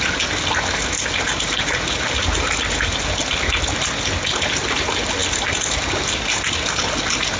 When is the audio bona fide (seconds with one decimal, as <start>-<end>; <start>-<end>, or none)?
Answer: 0.0-7.4